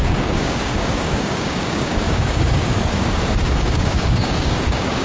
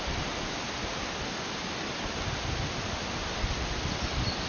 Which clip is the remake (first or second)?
first